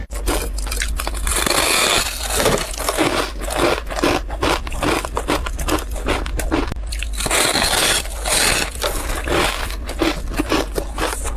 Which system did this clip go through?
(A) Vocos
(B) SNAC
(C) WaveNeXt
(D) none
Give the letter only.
D